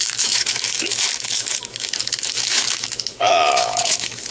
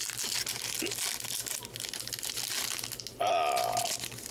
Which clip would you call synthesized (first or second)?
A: first